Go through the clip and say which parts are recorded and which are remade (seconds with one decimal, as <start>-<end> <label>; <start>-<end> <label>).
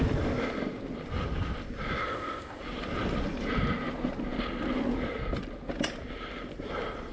0.0-2.0 recorded; 2.0-2.6 remade; 2.6-7.1 recorded